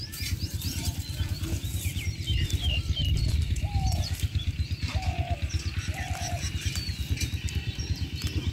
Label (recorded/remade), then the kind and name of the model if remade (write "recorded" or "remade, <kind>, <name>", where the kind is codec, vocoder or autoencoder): remade, vocoder, BigVGAN v2